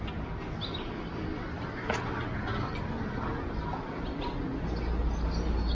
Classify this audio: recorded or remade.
recorded